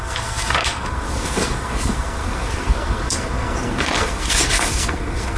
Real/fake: fake